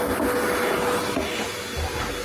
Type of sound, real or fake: real